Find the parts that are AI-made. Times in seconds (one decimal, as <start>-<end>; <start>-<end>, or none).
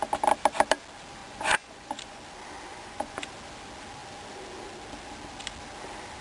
1.2-2.2; 2.7-3.3